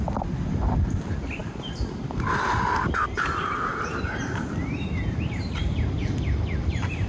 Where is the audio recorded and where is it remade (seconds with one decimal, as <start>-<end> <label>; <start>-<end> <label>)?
0.0-3.7 recorded; 3.7-5.8 remade; 5.8-7.1 recorded